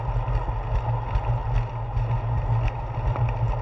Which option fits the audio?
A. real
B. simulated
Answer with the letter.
A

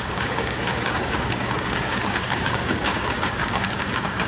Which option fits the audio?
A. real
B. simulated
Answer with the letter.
B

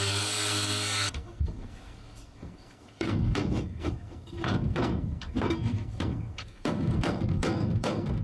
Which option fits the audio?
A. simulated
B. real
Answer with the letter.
A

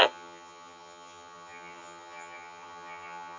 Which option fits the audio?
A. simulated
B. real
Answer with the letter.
A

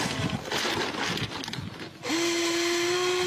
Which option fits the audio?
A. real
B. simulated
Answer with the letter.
A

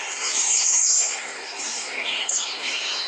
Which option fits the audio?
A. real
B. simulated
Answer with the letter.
B